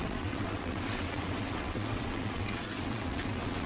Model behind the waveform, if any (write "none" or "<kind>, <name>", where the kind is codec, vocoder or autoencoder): vocoder, WaveNeXt